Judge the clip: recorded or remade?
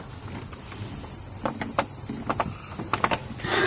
recorded